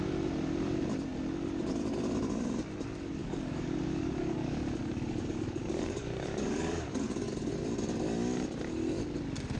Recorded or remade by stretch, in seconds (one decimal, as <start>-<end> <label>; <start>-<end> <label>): 0.0-3.2 recorded; 3.2-7.5 remade; 7.5-9.6 recorded